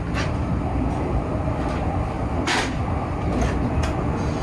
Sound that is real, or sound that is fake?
real